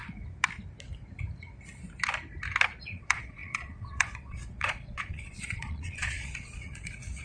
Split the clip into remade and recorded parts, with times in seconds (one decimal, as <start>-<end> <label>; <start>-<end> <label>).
0.0-2.7 recorded; 2.7-7.2 remade